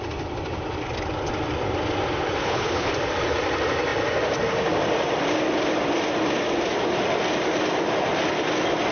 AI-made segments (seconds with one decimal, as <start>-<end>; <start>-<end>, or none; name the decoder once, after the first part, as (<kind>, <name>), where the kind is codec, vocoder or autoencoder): 2.4-2.9 (codec, HILCodec)